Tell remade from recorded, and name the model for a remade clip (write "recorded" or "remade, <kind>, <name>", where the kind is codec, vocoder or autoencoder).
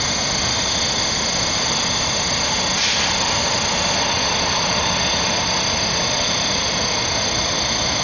recorded